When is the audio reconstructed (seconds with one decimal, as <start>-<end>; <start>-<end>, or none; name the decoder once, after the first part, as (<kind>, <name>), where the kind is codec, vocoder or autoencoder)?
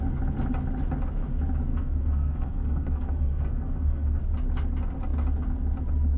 1.7-4.2 (codec, SNAC)